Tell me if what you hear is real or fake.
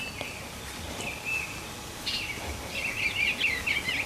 real